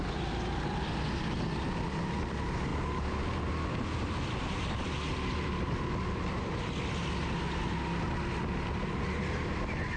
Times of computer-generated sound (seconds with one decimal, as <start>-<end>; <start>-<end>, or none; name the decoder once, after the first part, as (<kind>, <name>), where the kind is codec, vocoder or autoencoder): none